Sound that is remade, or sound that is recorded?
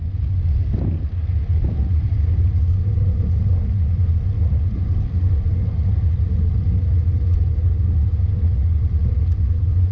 recorded